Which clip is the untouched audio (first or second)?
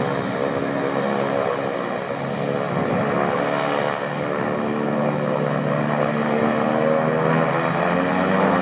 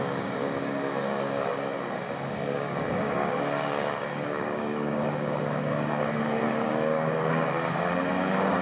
first